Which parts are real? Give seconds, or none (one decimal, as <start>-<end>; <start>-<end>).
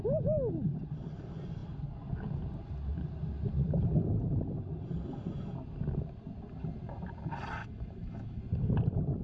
0.0-7.6; 8.4-9.2